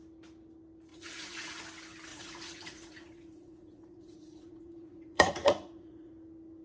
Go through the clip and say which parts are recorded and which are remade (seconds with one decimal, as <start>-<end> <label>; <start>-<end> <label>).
0.0-0.9 recorded; 0.9-1.6 remade; 1.6-2.1 recorded; 2.1-6.1 remade; 6.1-6.6 recorded